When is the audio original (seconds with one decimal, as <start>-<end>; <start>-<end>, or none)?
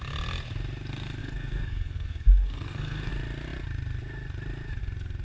0.0-1.2; 3.1-5.2